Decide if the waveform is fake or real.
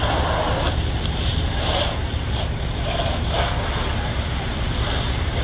real